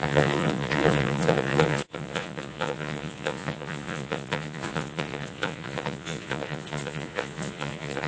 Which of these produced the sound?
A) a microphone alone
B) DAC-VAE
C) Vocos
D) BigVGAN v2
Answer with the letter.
C